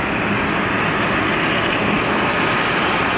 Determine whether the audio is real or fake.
real